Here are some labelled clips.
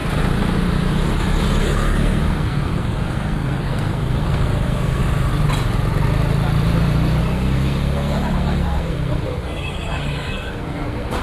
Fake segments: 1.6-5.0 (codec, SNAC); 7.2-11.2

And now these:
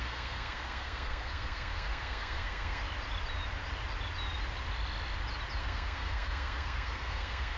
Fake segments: 0.0-2.8 (codec, SNAC); 5.6-7.6